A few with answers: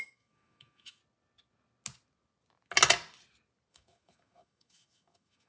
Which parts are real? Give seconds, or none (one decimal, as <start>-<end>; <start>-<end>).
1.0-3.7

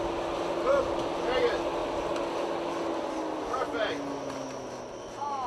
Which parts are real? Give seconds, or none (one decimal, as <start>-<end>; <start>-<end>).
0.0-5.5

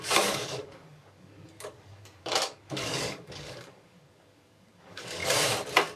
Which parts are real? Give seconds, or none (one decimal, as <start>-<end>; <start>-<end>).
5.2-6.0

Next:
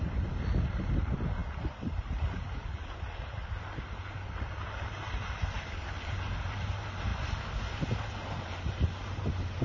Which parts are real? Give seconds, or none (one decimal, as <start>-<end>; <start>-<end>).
7.1-8.4

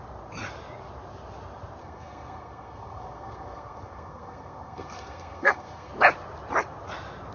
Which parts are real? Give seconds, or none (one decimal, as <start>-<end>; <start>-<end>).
0.0-1.8; 5.9-7.3

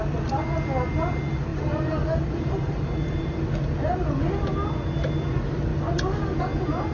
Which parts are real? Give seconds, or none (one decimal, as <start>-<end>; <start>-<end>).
0.0-1.5; 3.4-6.9

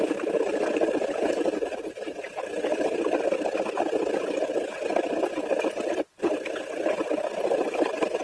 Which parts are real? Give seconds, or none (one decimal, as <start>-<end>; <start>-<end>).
0.0-8.2

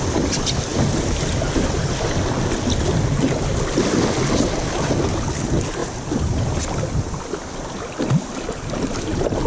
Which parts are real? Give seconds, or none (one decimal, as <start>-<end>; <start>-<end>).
0.0-9.5